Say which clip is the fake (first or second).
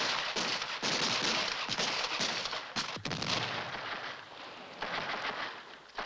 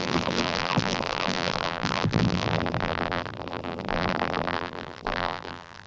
second